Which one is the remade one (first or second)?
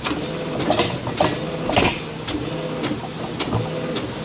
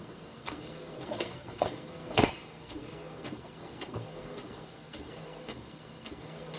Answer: second